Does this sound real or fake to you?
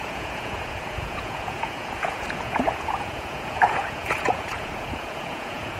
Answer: fake